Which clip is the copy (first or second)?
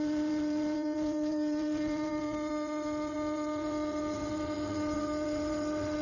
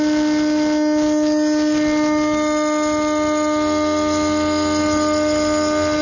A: first